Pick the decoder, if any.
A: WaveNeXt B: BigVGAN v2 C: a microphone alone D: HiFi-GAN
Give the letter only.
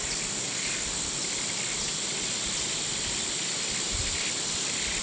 C